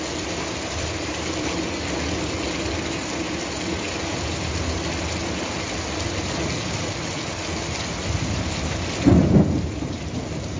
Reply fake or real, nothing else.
real